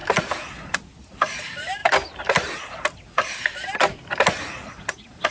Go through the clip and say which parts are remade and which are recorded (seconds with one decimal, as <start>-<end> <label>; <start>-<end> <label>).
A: 0.0-1.4 recorded; 1.4-1.8 remade; 1.8-5.3 recorded